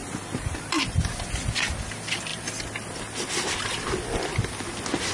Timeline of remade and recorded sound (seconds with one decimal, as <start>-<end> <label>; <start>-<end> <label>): 0.0-0.9 remade; 0.9-5.1 recorded